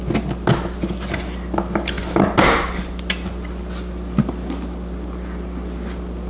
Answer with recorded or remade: recorded